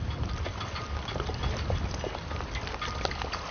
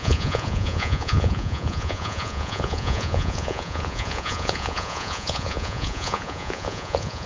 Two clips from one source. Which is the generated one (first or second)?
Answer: second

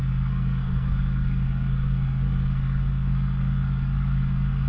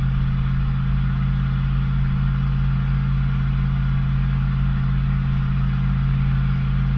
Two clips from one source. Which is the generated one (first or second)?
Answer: first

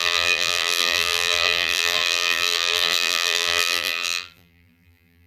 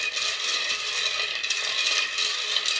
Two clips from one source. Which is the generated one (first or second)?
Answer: first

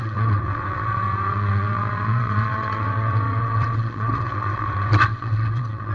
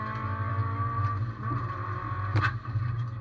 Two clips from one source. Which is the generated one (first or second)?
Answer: first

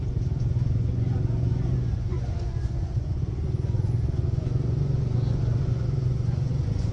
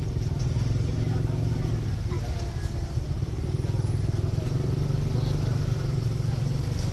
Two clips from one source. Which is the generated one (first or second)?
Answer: first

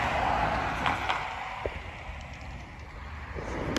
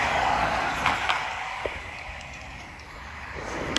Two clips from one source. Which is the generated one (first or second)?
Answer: second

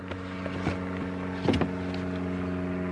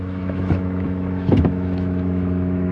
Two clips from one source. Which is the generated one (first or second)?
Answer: second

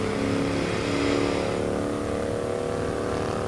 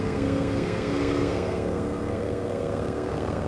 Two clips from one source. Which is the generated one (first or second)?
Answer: second